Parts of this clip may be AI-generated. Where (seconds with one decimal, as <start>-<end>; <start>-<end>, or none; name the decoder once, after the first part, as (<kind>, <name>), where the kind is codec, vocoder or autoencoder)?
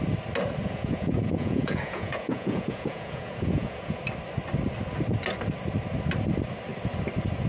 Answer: 0.6-4.0 (vocoder, Vocos)